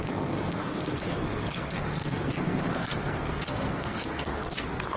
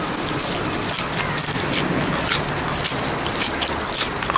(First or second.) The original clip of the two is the second